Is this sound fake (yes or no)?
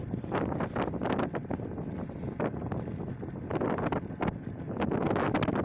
no